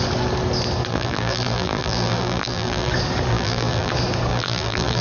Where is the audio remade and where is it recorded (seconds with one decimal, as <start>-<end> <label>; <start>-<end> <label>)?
0.0-0.9 recorded; 0.9-2.9 remade; 2.9-3.3 recorded; 3.3-3.9 remade; 3.9-4.3 recorded; 4.3-5.0 remade